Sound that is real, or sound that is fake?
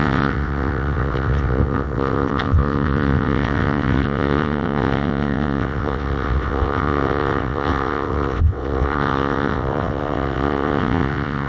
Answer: fake